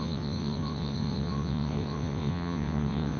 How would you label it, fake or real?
fake